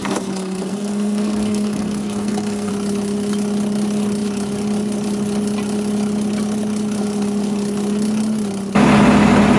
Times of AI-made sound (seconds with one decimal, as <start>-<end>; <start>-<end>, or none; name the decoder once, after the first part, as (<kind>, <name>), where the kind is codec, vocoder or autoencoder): 0.0-2.7 (codec, SNAC)